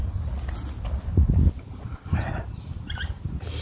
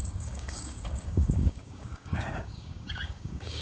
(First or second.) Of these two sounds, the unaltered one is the first